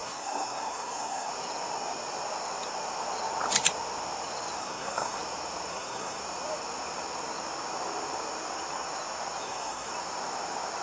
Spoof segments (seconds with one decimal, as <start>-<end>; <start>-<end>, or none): 0.0-1.3; 4.6-5.2; 5.7-6.2; 9.4-9.9